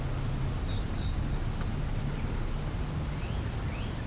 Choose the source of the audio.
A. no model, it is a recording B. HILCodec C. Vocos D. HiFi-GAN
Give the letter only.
A